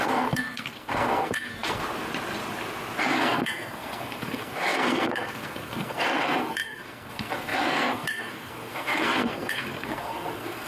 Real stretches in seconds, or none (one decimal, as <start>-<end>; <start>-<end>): 1.8-3.0